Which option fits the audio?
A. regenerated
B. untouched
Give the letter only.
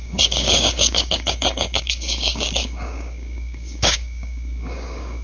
A